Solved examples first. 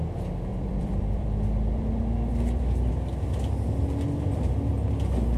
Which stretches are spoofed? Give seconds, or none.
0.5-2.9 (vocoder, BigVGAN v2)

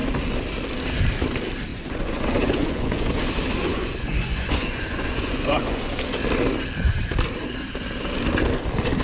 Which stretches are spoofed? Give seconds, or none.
1.7-3.2 (vocoder, Vocos); 3.6-5.9

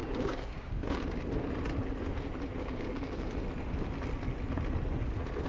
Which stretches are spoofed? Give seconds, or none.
0.0-1.0 (codec, DAC); 2.6-3.3

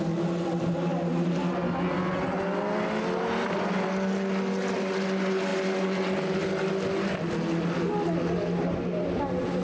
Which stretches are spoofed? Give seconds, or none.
none

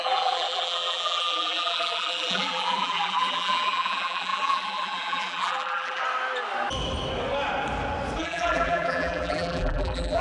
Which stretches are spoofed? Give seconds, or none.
0.0-6.0 (vocoder, BigVGAN v2); 8.2-10.2

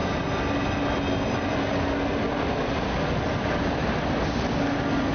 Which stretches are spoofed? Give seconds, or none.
none

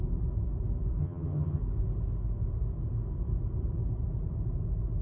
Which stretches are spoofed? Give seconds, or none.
1.0-1.6 (vocoder, HiFi-GAN)